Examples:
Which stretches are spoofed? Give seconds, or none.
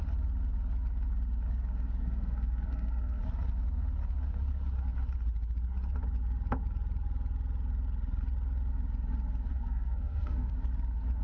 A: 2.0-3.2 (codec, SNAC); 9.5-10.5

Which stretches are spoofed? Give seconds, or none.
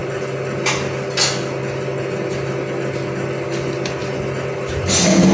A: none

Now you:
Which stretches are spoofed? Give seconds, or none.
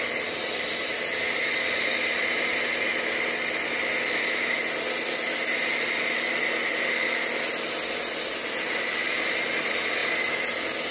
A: none